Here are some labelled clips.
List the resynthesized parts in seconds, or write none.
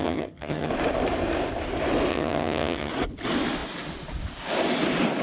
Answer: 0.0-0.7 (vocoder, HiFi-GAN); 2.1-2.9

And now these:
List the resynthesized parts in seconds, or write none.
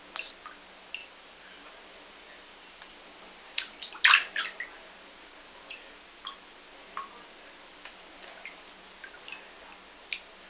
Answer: 1.0-3.7 (vocoder, BigVGAN v2)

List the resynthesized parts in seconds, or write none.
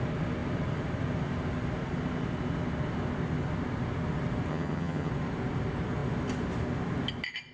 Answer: 4.5-5.1 (vocoder, HiFi-GAN)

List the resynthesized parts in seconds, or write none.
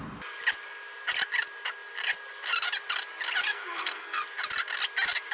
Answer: 3.5-4.2 (codec, SNAC)